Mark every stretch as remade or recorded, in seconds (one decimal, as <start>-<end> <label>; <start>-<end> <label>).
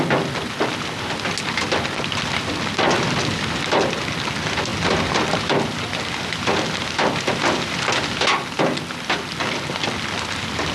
0.0-10.7 recorded